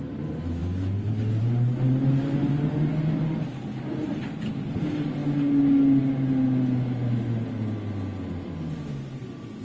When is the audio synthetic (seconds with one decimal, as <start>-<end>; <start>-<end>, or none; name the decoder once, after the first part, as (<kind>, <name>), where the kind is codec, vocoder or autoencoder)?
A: none